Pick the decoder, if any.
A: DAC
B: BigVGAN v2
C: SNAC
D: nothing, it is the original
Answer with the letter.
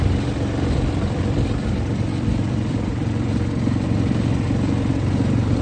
B